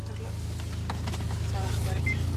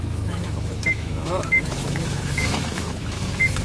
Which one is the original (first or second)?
first